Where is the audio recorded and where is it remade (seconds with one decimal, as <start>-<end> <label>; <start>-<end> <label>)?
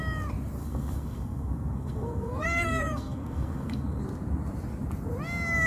0.0-0.6 recorded; 0.6-4.0 remade; 4.0-5.7 recorded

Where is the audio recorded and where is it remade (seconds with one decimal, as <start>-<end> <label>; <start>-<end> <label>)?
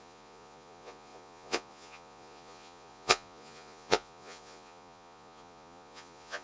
0.0-6.4 remade